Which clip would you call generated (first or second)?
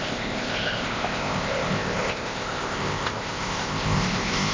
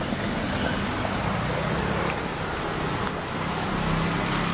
first